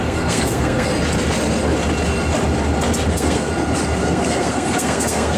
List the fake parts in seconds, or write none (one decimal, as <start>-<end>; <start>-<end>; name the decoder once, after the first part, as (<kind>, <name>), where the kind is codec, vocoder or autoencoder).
0.0-0.9 (codec, SNAC); 3.1-3.5; 4.0-5.4